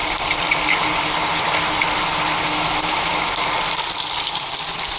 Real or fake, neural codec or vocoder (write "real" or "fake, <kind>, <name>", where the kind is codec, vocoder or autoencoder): real